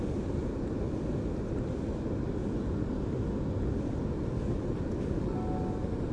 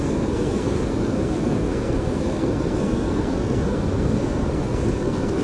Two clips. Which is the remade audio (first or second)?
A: second